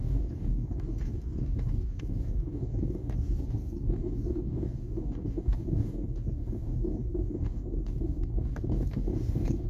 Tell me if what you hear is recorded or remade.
remade